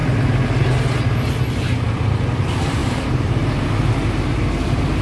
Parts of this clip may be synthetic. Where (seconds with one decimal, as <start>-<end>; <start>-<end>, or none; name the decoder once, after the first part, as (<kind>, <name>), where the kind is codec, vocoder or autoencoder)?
2.8-3.5 (vocoder, BigVGAN v2)